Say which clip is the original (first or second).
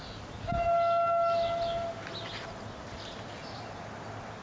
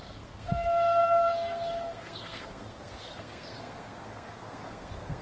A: first